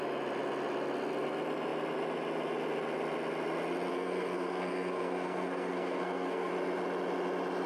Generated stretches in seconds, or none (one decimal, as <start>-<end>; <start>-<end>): 3.9-6.5